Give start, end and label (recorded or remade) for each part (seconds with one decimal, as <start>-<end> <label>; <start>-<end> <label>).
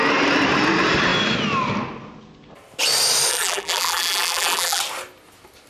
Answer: 0.0-3.3 recorded; 3.3-4.8 remade; 4.8-5.7 recorded